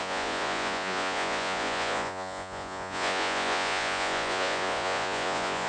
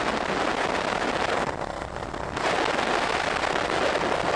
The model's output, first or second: first